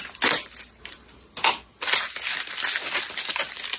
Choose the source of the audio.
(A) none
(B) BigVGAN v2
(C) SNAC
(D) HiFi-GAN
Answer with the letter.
A